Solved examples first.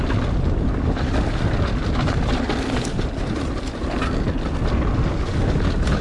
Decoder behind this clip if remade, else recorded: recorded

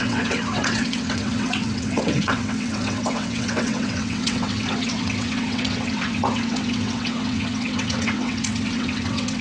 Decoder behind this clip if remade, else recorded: remade, vocoder, WaveNeXt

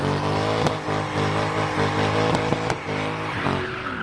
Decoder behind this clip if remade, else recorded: recorded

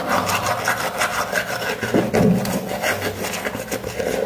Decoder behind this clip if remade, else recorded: recorded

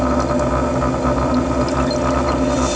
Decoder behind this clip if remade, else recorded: recorded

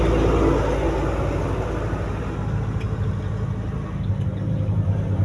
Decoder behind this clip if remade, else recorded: recorded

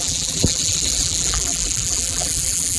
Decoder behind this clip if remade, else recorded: remade, vocoder, BigVGAN v2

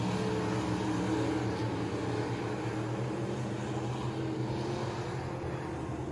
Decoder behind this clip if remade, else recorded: recorded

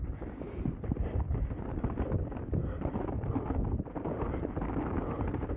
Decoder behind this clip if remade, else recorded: recorded